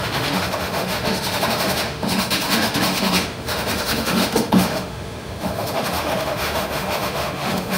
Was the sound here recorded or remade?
remade